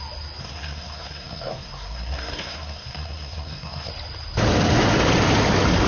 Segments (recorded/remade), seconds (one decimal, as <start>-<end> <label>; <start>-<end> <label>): 0.0-0.4 recorded; 0.4-3.9 remade; 3.9-5.9 recorded

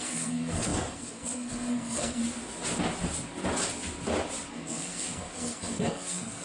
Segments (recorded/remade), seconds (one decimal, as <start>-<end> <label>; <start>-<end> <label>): 0.0-2.2 remade; 2.2-4.5 recorded; 4.5-6.4 remade

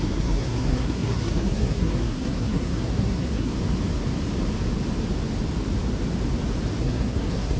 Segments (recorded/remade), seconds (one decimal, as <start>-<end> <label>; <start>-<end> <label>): 0.0-3.5 remade; 3.5-6.8 recorded; 6.8-7.6 remade

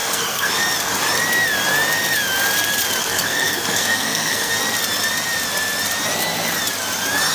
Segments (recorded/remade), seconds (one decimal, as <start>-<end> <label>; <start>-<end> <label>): 0.0-0.5 remade; 0.5-3.0 recorded; 3.0-4.5 remade; 4.5-7.3 recorded

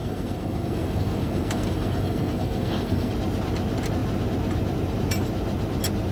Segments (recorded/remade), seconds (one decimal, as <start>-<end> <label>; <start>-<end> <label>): 0.0-3.1 remade; 3.1-6.1 recorded

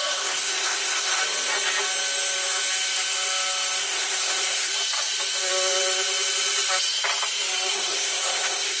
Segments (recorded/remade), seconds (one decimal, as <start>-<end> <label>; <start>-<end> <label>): 0.0-1.2 remade; 1.2-3.8 recorded; 3.8-4.7 remade; 4.7-7.7 recorded; 7.7-8.8 remade